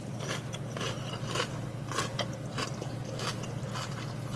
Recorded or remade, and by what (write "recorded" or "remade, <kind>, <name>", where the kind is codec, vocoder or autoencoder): recorded